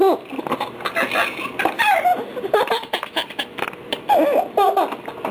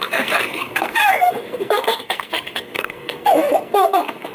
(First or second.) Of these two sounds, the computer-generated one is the second